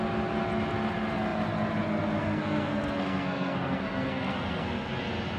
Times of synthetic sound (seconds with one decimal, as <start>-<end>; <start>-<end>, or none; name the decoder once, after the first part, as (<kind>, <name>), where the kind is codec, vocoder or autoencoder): 2.2-4.9 (codec, SNAC)